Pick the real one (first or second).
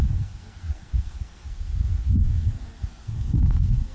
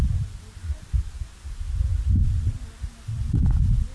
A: second